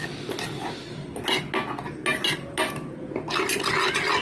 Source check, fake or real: real